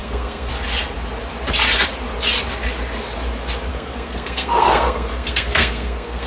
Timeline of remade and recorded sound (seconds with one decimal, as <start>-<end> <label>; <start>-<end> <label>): 0.0-0.5 remade; 0.5-3.7 recorded; 3.7-6.3 remade